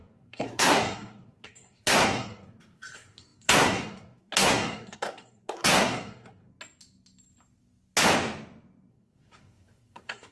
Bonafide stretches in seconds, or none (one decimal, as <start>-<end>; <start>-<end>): 6.5-8.9